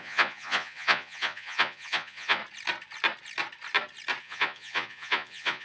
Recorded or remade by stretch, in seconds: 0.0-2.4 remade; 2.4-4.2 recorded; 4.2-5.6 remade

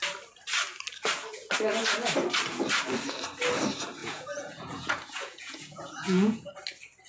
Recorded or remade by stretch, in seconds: 0.0-4.0 recorded; 4.0-6.5 remade; 6.5-7.1 recorded

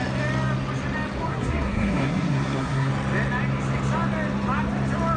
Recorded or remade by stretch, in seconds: 0.0-1.3 recorded; 1.3-2.9 remade; 2.9-5.2 recorded

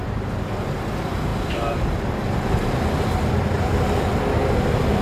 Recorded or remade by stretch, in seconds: 0.0-5.0 recorded

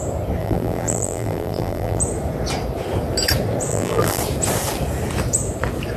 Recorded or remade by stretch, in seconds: 0.0-0.4 recorded; 0.4-2.0 remade; 2.0-3.7 recorded; 3.7-4.2 remade; 4.2-6.0 recorded